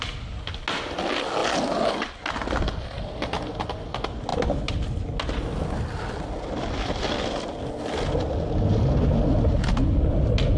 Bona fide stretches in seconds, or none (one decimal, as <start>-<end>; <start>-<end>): 0.0-10.6